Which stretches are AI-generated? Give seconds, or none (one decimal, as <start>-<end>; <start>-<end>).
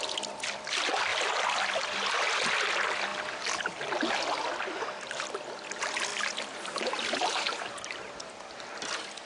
none